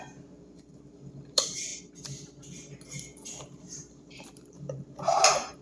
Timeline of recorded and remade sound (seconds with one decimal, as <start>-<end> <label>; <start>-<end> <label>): 0.0-1.7 remade; 1.7-3.4 recorded; 3.4-5.6 remade